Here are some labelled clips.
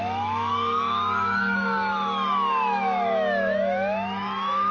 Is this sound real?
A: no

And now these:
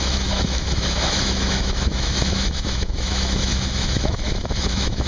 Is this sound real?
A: no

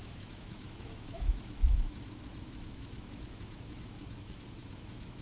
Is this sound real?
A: no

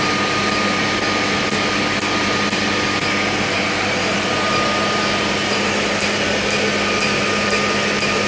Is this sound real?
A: yes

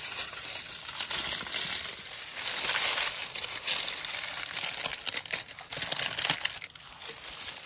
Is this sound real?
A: yes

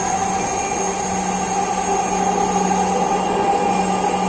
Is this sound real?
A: yes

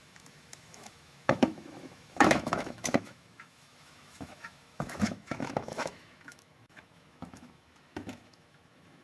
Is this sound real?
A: no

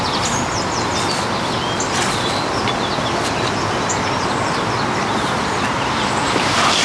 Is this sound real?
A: yes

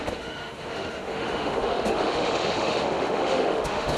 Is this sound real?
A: no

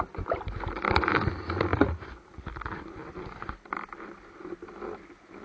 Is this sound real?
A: yes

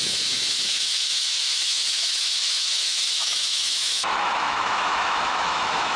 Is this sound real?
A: no